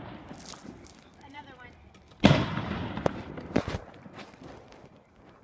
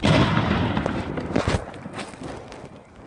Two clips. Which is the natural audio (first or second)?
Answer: second